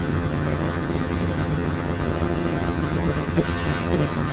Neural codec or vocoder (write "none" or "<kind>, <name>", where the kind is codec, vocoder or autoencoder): vocoder, HiFi-GAN